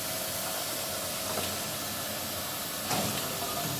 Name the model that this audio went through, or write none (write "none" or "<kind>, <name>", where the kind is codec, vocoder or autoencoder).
none